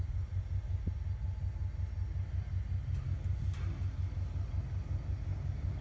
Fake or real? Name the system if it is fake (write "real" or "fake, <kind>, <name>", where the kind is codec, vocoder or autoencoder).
real